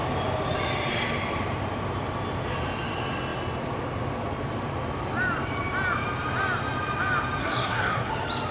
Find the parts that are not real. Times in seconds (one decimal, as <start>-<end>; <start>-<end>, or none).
7.4-8.1